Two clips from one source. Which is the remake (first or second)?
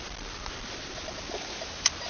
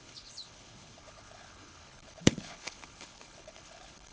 second